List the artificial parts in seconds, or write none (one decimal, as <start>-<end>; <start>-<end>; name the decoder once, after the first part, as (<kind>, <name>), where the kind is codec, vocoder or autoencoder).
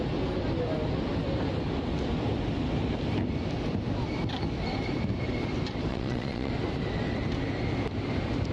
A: 5.9-6.5 (vocoder, Vocos)